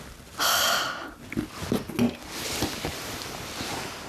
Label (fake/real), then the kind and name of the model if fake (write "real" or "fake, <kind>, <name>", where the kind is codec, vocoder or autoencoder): real